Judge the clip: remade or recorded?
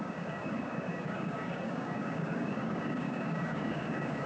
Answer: remade